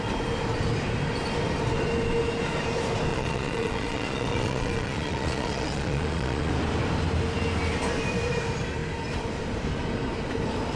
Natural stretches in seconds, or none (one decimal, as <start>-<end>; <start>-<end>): 0.0-3.1; 6.5-10.8